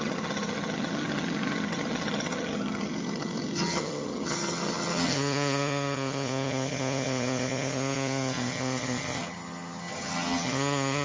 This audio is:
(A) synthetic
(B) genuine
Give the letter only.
A